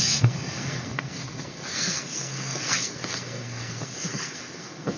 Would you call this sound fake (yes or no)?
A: yes